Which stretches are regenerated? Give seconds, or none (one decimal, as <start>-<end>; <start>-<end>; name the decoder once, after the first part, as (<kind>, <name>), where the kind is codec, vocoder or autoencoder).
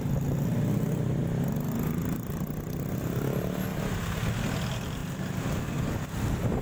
none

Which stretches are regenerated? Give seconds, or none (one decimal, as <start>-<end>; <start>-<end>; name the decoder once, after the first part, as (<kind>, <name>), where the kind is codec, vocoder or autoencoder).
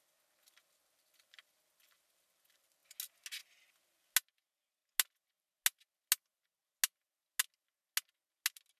none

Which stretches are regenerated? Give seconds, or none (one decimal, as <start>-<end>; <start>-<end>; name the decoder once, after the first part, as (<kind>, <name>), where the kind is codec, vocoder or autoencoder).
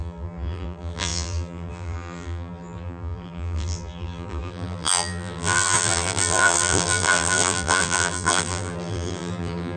0.0-9.8 (vocoder, BigVGAN v2)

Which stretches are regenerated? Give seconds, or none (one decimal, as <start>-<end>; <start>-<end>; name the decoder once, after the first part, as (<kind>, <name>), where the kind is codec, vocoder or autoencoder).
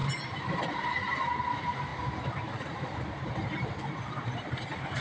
0.0-5.0 (vocoder, BigVGAN v2)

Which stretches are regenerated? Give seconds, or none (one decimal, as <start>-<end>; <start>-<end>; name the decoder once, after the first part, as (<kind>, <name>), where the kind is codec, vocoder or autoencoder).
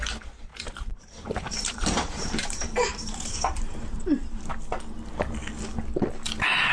0.5-4.5 (vocoder, BigVGAN v2)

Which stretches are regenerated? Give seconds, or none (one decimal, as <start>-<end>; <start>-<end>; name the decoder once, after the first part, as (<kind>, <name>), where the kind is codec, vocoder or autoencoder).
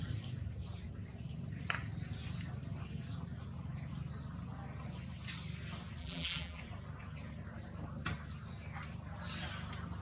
6.0-6.6 (vocoder, BigVGAN v2)